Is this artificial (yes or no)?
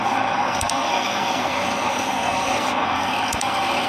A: yes